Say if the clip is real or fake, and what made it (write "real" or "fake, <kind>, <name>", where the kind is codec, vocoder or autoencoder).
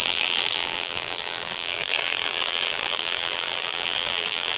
fake, vocoder, BigVGAN v2